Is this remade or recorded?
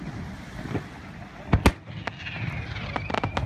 recorded